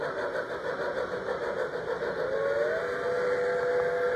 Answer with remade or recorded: recorded